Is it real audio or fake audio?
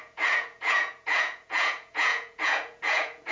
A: fake